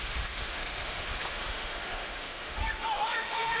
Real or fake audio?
fake